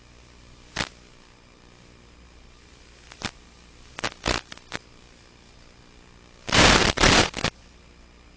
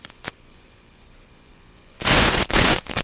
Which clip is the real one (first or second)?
first